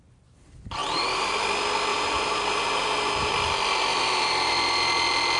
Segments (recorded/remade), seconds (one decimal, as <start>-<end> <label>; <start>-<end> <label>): 0.0-0.8 recorded; 0.8-1.4 remade; 1.4-1.9 recorded; 1.9-3.3 remade; 3.3-3.9 recorded; 3.9-4.5 remade; 4.5-5.4 recorded